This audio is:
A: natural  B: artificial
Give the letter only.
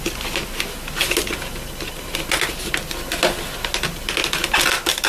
A